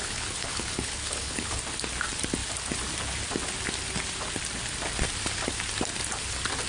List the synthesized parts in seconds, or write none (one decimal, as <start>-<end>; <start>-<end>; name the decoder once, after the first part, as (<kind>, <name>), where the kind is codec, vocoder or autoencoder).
0.0-1.6 (codec, HILCodec)